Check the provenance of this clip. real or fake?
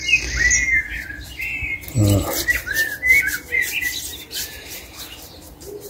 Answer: real